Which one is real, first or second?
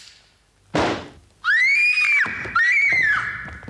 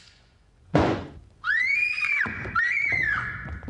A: first